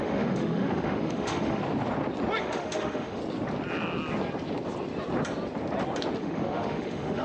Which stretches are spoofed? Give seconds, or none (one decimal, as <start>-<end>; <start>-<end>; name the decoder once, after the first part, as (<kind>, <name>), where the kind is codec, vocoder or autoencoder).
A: 0.0-1.6 (autoencoder, DAC-VAE); 2.4-3.2; 6.2-7.2